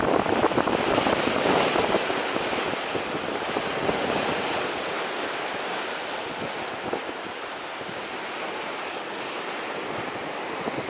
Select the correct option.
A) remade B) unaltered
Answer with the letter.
B